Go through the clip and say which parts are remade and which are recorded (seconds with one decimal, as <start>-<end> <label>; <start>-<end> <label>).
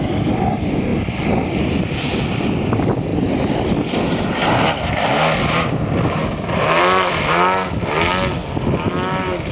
0.0-3.1 recorded; 3.1-7.3 remade; 7.3-8.4 recorded; 8.4-8.9 remade; 8.9-9.5 recorded